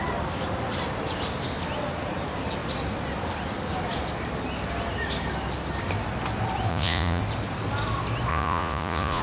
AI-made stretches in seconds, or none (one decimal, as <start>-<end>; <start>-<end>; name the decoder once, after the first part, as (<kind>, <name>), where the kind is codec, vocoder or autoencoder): 6.7-7.2 (vocoder, Vocos); 8.3-9.2